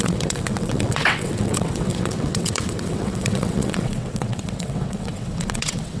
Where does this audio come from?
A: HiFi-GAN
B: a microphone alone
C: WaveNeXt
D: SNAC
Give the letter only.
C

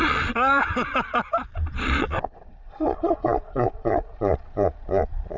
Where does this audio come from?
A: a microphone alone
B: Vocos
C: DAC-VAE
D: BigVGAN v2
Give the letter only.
B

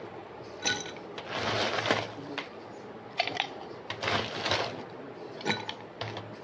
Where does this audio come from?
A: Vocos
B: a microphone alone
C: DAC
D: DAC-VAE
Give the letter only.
B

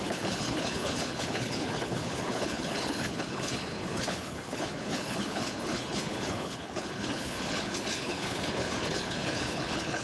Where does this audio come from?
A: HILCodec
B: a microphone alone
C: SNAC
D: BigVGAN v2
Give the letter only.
A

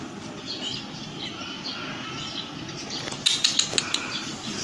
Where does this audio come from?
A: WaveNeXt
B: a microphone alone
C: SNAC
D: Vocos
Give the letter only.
B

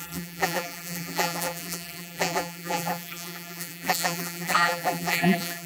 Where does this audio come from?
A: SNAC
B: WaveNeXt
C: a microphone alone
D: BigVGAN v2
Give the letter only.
D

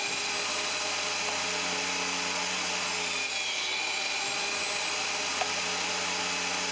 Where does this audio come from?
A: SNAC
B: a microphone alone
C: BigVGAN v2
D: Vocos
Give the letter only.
B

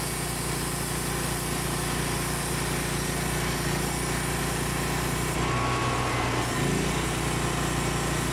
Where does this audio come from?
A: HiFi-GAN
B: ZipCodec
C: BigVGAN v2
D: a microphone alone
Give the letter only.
D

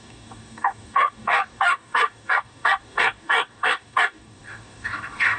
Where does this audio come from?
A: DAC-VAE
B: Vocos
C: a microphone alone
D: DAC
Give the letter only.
D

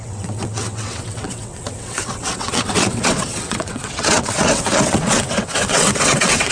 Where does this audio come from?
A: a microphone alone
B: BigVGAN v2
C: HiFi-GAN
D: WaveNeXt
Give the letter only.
D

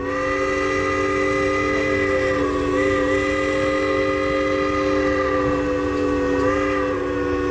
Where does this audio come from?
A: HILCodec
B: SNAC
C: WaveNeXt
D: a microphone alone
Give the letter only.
D